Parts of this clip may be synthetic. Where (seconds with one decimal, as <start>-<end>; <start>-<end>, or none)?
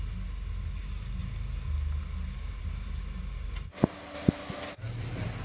none